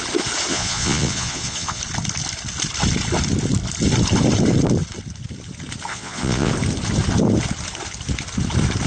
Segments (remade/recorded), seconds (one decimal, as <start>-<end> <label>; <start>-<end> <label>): 0.0-0.5 recorded; 0.5-1.8 remade; 1.8-5.9 recorded; 5.9-6.5 remade; 6.5-8.9 recorded